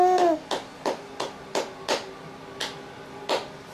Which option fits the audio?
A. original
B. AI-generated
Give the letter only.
A